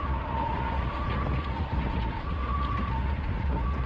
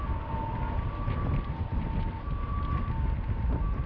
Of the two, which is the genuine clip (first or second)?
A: second